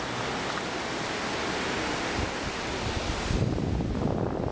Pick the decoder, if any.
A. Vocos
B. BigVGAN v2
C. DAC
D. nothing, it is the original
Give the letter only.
D